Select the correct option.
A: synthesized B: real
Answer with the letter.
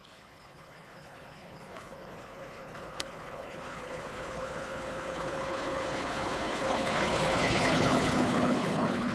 A